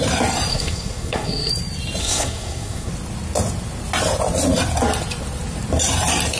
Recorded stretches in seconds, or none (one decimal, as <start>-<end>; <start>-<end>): 0.0-0.5; 1.5-2.0; 2.9-6.4